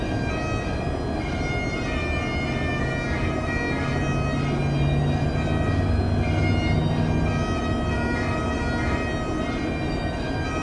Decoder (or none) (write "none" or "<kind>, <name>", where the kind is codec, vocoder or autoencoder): none